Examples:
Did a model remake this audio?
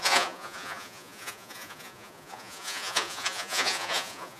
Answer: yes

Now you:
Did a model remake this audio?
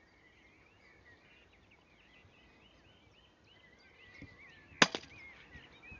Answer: no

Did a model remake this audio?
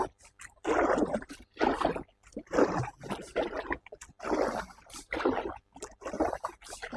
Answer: no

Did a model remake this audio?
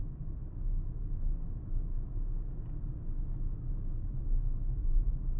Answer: no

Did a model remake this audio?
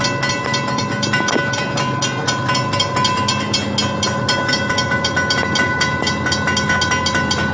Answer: no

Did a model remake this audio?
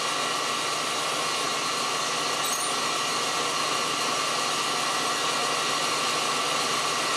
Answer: no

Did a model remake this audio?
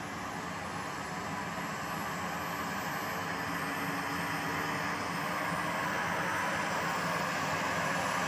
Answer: no